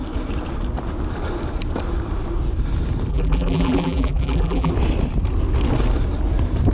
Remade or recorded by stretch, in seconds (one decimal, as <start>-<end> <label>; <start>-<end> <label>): 0.0-3.1 recorded; 3.1-4.7 remade; 4.7-6.7 recorded

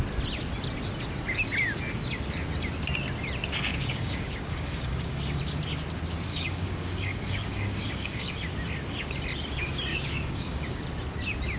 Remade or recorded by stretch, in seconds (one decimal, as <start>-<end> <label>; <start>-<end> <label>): 0.0-3.7 recorded; 3.7-5.4 remade; 5.4-6.3 recorded; 6.3-8.3 remade; 8.3-9.9 recorded; 9.9-10.8 remade; 10.8-11.6 recorded

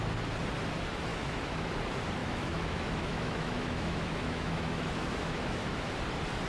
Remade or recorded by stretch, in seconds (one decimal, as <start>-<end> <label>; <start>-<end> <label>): 0.0-1.1 recorded; 1.1-1.7 remade; 1.7-2.2 recorded; 2.2-5.9 remade; 5.9-6.5 recorded

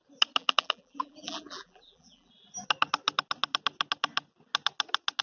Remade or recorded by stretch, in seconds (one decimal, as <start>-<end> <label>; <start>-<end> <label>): 0.0-0.4 recorded; 0.4-2.3 remade; 2.3-5.2 recorded

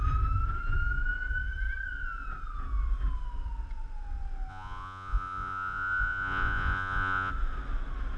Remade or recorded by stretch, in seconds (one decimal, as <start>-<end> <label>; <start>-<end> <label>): 0.0-4.5 recorded; 4.5-7.3 remade; 7.3-8.2 recorded

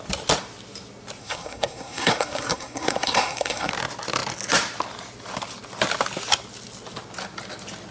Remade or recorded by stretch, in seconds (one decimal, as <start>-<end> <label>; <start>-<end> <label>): 0.0-1.2 recorded; 1.2-3.7 remade; 3.7-7.9 recorded

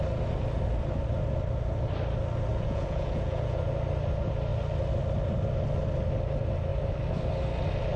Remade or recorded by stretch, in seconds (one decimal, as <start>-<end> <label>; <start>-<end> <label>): 0.0-2.5 recorded; 2.5-3.6 remade; 3.6-8.0 recorded